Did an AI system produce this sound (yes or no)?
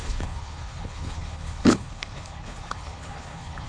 yes